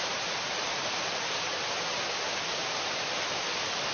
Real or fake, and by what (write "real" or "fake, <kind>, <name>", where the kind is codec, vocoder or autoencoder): real